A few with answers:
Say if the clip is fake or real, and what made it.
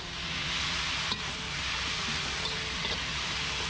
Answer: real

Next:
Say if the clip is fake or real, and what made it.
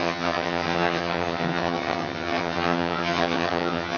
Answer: fake, vocoder, HiFi-GAN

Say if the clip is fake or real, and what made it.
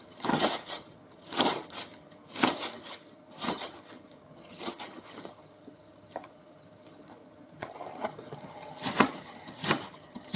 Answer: fake, vocoder, HiFi-GAN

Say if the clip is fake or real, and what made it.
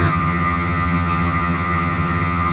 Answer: fake, vocoder, HiFi-GAN